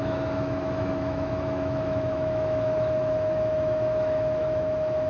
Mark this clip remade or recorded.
remade